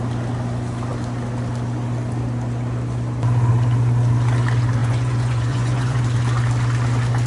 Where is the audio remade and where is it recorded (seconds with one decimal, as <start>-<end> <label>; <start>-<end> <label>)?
0.0-4.8 recorded; 4.8-6.0 remade; 6.0-7.3 recorded